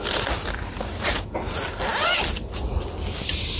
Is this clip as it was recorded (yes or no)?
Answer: yes